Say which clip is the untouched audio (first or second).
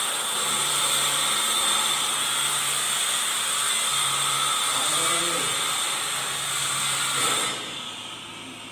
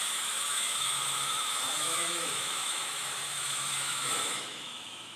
first